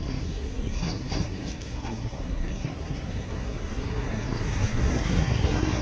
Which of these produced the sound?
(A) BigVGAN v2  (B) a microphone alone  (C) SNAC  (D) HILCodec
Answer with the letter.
C